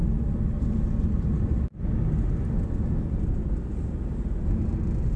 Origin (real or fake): real